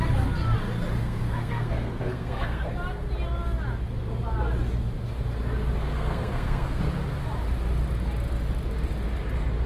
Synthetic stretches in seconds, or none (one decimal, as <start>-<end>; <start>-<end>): 1.0-2.7; 5.8-6.8